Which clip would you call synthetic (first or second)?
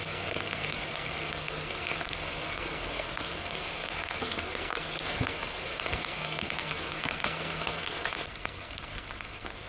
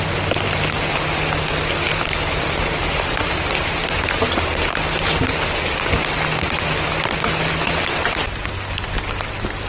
first